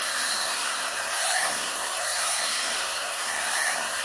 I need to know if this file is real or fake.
fake